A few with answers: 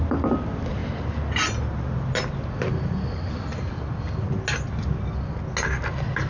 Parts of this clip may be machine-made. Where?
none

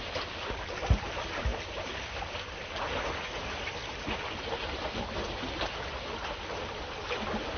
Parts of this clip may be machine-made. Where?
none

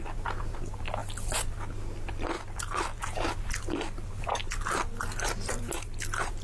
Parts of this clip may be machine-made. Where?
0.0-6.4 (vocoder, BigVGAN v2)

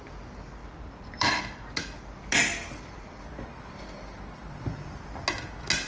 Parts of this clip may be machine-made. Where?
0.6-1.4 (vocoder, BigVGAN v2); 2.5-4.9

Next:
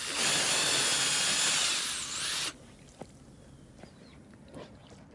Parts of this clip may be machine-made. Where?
none

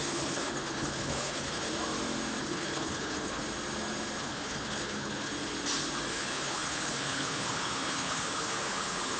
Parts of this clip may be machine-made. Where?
0.0-1.7 (codec, HILCodec); 2.4-3.4; 4.2-5.3; 6.1-9.2